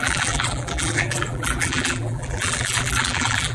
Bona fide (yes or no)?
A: no